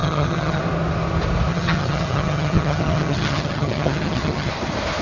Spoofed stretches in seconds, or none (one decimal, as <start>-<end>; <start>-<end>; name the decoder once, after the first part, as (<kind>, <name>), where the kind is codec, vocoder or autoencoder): 0.0-0.6 (vocoder, HiFi-GAN); 1.5-4.5